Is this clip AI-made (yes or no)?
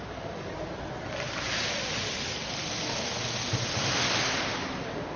no